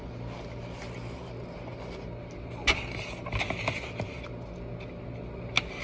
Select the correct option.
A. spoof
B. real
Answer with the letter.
B